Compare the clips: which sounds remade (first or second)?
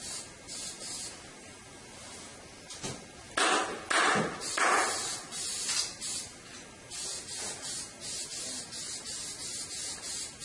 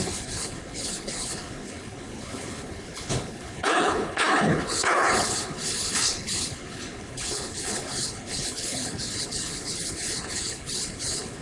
second